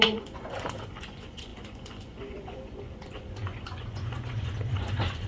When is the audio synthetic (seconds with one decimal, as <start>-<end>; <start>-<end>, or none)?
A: 0.0-5.3